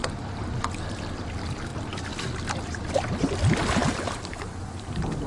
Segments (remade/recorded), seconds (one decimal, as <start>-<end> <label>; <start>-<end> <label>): 0.0-0.6 remade; 0.6-1.7 recorded; 1.7-3.1 remade; 3.1-3.8 recorded; 3.8-5.3 remade